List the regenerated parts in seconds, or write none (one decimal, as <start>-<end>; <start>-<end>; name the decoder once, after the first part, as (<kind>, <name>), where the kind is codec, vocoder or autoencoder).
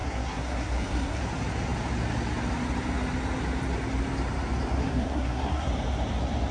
0.0-1.2 (codec, SNAC); 4.8-5.7